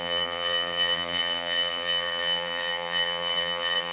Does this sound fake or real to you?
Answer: fake